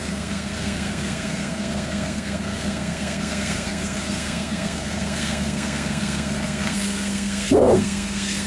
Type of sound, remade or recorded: remade